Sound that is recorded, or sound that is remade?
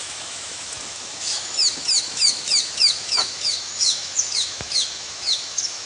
remade